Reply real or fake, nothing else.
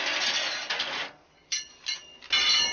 real